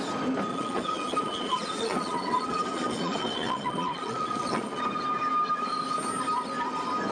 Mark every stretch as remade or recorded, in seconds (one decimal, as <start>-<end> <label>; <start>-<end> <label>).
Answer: 0.0-0.5 recorded; 0.5-4.8 remade; 4.8-7.1 recorded